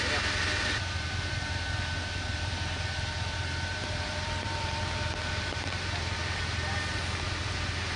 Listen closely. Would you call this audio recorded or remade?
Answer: remade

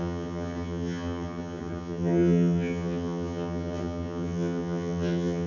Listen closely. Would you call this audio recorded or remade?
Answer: remade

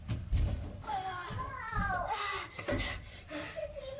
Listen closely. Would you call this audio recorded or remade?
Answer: remade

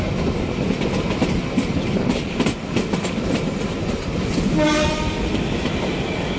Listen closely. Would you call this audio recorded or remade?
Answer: recorded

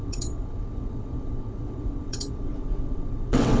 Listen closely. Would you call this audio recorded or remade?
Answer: remade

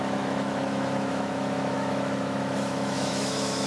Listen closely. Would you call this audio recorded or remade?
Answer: remade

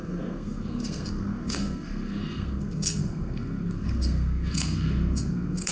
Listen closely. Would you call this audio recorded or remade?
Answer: remade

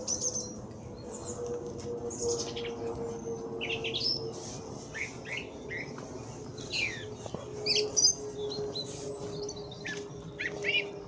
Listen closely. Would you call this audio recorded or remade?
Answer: recorded